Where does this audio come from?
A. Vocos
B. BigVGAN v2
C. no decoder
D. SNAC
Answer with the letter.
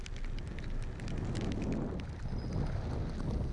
C